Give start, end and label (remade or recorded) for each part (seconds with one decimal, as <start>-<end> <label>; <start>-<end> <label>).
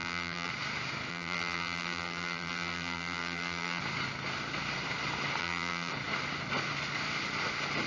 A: 0.0-0.5 remade; 0.5-1.1 recorded; 1.1-3.8 remade; 3.8-5.4 recorded; 5.4-5.9 remade; 5.9-7.9 recorded